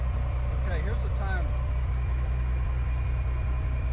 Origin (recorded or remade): recorded